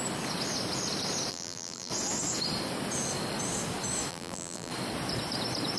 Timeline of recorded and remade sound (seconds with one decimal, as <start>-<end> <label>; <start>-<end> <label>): 0.0-1.3 recorded; 1.3-1.9 remade; 1.9-4.1 recorded; 4.1-4.7 remade; 4.7-5.8 recorded